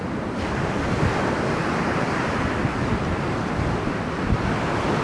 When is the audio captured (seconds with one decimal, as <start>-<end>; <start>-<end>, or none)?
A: 0.0-5.0